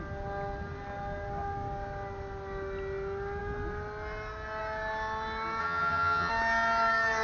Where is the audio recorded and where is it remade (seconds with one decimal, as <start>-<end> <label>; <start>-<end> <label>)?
0.0-5.6 recorded; 5.6-6.3 remade; 6.3-7.2 recorded